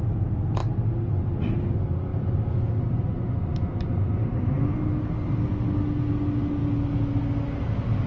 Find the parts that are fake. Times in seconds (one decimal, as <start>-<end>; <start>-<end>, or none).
none